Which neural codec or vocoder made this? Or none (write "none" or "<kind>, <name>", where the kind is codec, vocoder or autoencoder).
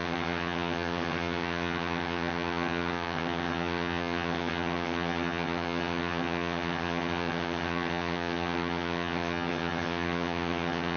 vocoder, HiFi-GAN